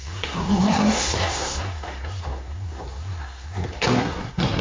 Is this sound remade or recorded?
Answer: remade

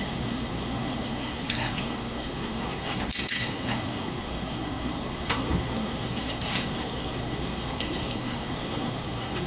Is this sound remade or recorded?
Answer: remade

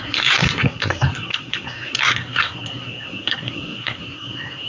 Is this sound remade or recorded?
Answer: remade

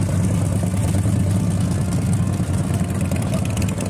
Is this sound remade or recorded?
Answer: recorded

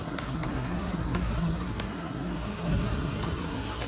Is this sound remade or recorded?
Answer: remade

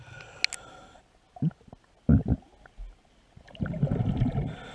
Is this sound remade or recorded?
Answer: recorded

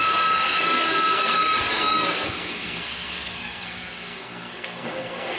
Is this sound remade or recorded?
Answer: remade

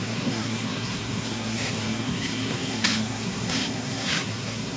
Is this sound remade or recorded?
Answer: remade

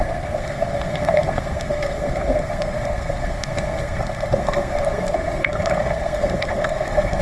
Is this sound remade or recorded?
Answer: remade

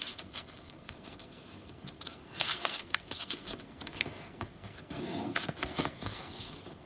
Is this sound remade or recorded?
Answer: remade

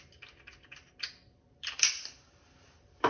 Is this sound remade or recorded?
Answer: recorded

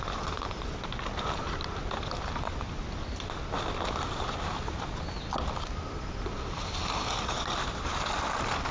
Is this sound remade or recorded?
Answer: recorded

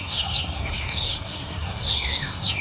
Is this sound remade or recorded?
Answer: remade